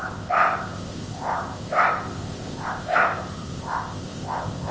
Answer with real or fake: fake